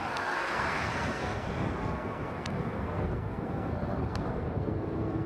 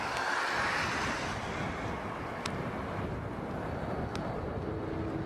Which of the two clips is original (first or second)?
second